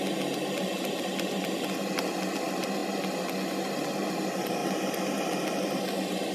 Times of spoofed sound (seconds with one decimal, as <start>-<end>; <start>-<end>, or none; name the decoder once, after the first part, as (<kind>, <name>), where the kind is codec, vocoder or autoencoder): none

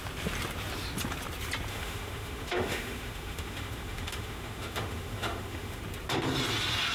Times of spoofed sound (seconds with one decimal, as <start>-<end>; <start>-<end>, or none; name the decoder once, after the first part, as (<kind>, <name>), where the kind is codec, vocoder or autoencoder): 1.7-5.8 (autoencoder, DAC-VAE)

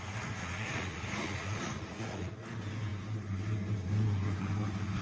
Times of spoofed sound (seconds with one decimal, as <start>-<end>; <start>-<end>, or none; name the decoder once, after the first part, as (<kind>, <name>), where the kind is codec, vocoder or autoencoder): 0.4-2.3 (vocoder, Vocos)

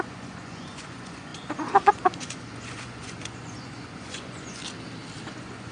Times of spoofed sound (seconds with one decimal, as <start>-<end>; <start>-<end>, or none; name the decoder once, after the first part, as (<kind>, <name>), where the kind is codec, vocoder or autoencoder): 0.0-4.6 (vocoder, Vocos); 5.2-5.7

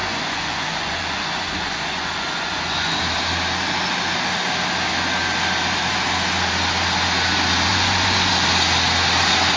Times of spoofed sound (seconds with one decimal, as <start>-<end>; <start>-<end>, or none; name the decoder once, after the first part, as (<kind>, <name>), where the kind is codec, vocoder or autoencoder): 0.0-3.0 (vocoder, Vocos); 7.7-8.3

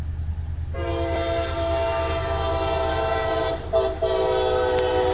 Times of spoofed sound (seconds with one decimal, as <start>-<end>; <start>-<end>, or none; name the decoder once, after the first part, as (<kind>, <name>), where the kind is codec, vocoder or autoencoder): none

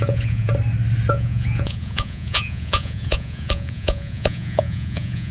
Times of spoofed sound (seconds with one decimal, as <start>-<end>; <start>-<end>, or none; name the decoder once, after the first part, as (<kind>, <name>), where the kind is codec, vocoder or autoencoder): 0.0-0.5 (vocoder, Vocos); 1.1-5.3

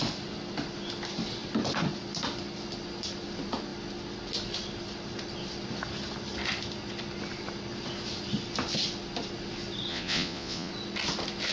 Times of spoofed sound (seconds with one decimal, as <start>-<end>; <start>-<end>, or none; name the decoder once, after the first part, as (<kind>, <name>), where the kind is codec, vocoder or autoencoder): 9.9-10.7 (vocoder, Vocos)